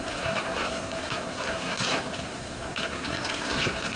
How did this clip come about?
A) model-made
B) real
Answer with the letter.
A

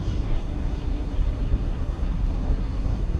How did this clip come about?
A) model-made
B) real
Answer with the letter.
A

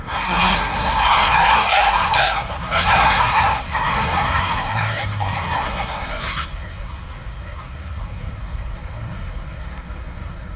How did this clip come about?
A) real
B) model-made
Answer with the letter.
B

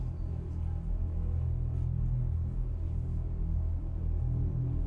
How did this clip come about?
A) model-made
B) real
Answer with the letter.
B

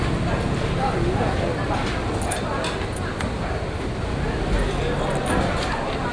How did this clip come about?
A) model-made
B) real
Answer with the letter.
B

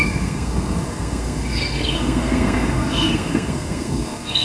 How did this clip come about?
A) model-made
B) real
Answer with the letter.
A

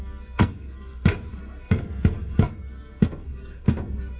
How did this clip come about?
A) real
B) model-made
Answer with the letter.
B